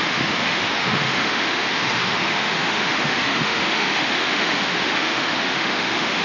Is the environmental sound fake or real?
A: fake